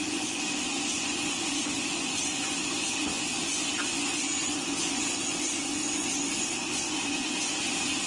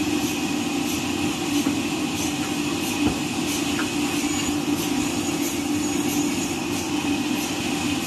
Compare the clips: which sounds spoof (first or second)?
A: first